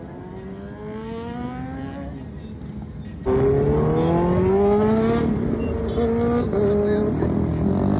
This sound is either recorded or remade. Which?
recorded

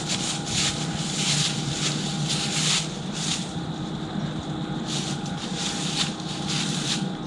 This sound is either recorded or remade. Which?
remade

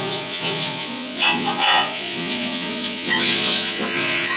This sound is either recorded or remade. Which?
remade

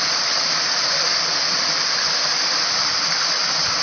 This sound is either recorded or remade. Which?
recorded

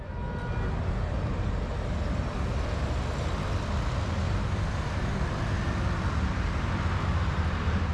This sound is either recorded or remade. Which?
recorded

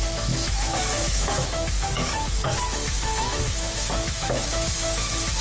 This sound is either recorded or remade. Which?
remade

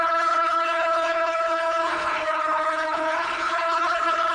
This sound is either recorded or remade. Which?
remade